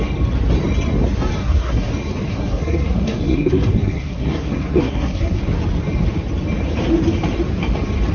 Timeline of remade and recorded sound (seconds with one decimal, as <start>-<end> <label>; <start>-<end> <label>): 0.0-1.4 recorded; 1.4-1.9 remade; 1.9-2.3 recorded; 2.3-5.4 remade; 5.4-8.1 recorded